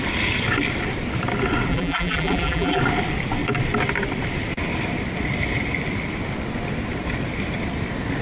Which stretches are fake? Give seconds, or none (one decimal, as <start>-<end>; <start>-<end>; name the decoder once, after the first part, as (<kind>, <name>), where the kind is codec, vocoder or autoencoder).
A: 1.7-2.8 (vocoder, BigVGAN v2)